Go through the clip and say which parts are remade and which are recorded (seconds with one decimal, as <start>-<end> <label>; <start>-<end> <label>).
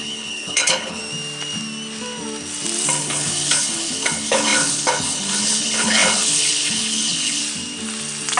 0.0-1.0 remade; 1.0-3.0 recorded; 3.0-7.4 remade; 7.4-8.4 recorded